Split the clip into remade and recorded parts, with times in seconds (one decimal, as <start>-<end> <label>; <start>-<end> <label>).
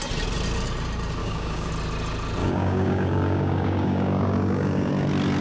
0.0-1.2 recorded; 1.2-1.7 remade; 1.7-2.4 recorded; 2.4-4.9 remade; 4.9-5.4 recorded